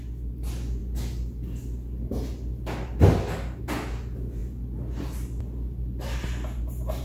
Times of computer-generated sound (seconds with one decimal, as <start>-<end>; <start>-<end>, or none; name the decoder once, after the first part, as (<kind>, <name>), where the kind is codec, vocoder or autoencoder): none